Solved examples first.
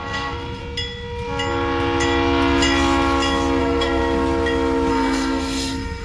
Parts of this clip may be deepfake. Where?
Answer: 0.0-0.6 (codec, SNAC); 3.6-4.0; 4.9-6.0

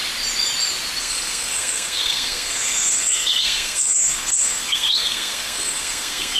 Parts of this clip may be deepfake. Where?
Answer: 1.0-6.4 (codec, SNAC)